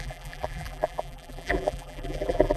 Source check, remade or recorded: remade